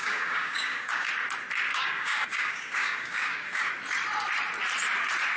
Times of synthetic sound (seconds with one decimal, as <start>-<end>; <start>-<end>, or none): 0.0-1.1; 1.7-3.7